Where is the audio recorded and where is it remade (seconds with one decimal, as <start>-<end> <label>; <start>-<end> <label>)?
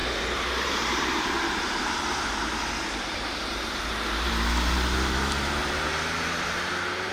0.0-4.3 remade; 4.3-5.6 recorded; 5.6-7.1 remade